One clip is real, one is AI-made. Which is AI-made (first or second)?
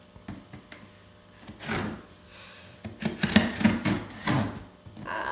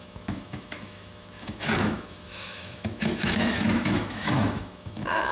second